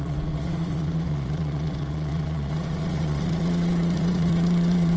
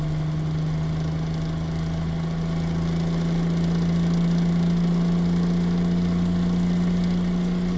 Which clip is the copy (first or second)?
first